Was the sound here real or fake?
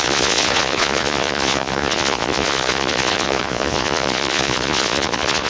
fake